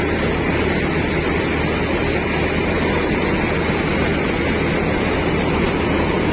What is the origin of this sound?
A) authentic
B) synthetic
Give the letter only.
A